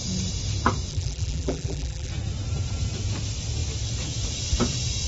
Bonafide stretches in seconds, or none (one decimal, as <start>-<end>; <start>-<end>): 0.0-0.9; 2.1-5.1